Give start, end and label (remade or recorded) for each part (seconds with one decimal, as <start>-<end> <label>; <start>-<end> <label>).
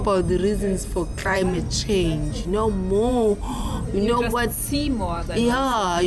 0.0-1.1 recorded; 1.1-1.7 remade; 1.7-3.1 recorded; 3.1-6.1 remade